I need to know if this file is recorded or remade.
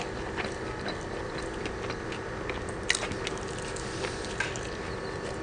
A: recorded